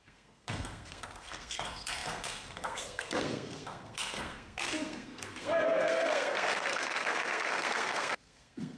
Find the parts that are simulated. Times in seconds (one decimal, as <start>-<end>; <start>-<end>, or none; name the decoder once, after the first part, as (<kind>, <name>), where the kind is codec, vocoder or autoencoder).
0.0-8.8 (codec, SNAC)

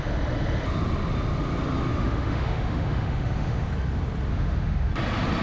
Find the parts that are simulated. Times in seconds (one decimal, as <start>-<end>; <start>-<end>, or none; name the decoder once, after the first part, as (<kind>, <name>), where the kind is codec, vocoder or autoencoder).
1.9-3.7 (autoencoder, DAC-VAE); 4.3-4.9

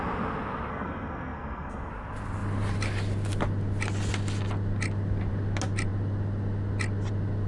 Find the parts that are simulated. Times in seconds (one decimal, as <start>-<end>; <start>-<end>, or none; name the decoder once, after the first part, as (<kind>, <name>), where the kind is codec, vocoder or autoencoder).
0.7-1.9 (codec, SNAC)